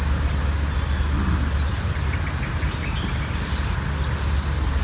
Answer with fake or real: real